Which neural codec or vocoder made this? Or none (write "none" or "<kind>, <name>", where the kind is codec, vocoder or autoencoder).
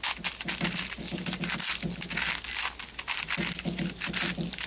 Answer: none